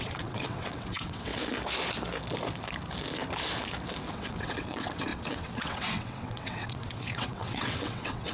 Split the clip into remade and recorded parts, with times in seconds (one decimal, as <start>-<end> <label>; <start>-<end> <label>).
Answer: 0.0-1.3 remade; 1.3-4.1 recorded; 4.1-8.3 remade